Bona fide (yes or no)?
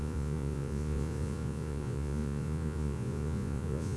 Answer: no